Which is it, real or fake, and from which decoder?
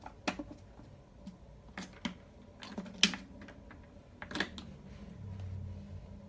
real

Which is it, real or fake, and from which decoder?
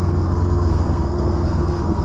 fake, codec, SNAC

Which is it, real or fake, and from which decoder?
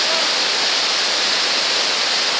real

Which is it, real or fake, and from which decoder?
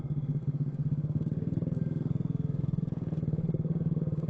fake, codec, SNAC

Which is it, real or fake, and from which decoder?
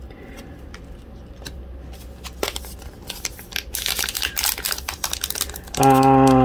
real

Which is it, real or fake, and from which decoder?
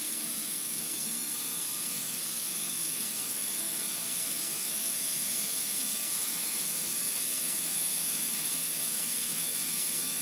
fake, codec, SNAC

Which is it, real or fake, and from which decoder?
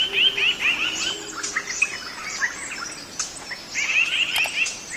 real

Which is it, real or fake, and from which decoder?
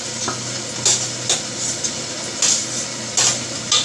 real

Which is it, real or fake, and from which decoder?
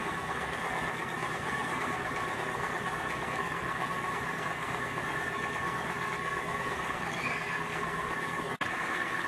fake, codec, SNAC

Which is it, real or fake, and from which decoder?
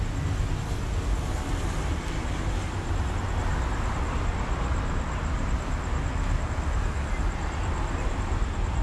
real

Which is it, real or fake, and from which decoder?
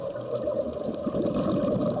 real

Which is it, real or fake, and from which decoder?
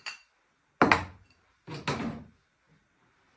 real